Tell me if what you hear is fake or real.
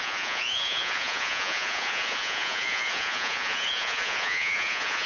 fake